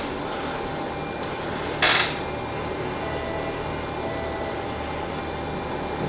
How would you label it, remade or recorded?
recorded